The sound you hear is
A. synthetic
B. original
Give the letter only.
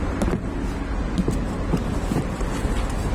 B